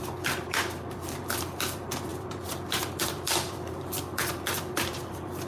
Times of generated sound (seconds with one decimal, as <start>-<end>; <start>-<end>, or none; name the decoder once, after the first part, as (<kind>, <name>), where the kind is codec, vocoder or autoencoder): 0.0-5.5 (vocoder, BigVGAN v2)